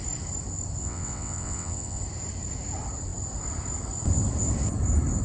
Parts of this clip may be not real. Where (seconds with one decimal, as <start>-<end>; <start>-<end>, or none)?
0.8-2.0